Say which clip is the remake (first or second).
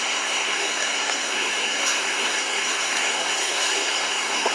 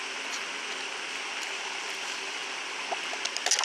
first